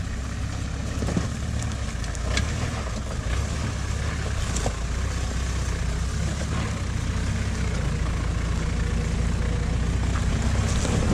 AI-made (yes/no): no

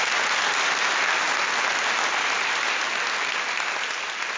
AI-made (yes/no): no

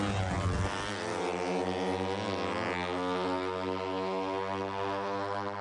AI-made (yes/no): no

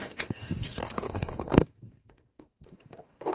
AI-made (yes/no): yes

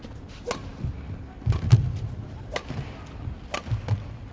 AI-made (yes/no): no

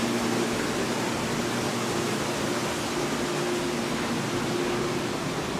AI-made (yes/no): no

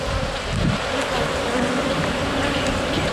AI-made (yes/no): no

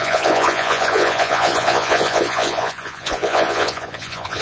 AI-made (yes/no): yes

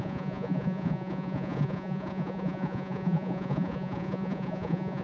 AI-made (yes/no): yes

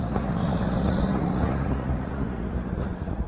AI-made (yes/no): yes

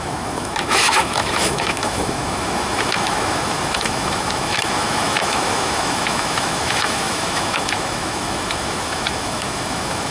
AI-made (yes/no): yes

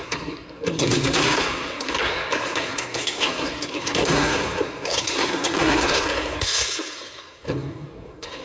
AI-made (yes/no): yes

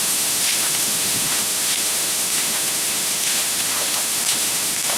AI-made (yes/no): yes